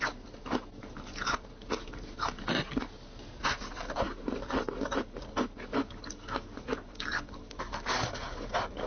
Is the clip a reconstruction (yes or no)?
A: no